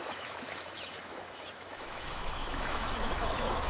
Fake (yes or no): yes